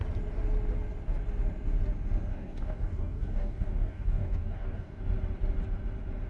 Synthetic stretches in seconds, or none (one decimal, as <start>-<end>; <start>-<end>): 2.3-5.0